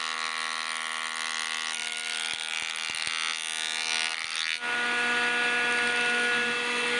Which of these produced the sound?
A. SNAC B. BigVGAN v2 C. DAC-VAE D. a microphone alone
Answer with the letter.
D